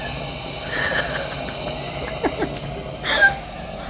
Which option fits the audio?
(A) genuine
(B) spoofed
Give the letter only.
A